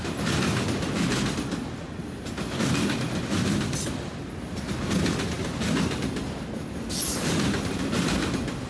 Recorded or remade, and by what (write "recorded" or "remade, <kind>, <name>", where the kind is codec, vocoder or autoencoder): recorded